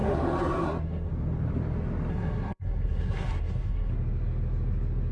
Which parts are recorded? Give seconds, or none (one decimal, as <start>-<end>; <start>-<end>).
1.1-2.1; 3.9-5.1